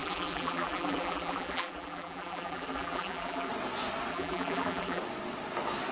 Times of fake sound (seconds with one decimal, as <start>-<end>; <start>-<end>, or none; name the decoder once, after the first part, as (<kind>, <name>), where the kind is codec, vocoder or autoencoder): 0.0-3.5 (vocoder, BigVGAN v2); 4.1-5.0